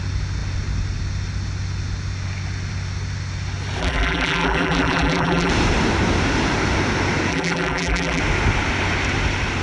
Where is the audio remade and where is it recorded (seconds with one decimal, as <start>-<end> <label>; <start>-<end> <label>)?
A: 0.0-3.8 recorded; 3.8-5.5 remade; 5.5-7.3 recorded; 7.3-8.2 remade; 8.2-9.6 recorded